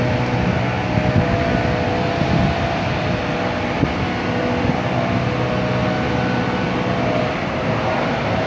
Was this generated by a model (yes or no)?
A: no